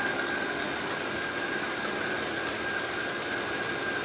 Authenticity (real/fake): real